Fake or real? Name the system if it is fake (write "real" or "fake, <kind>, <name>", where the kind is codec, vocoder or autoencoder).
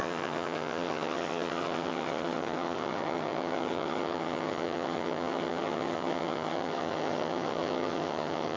fake, vocoder, HiFi-GAN